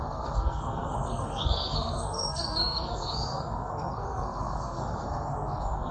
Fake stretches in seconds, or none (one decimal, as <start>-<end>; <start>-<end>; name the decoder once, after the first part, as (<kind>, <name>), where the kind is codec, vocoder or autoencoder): 0.0-5.9 (codec, SNAC)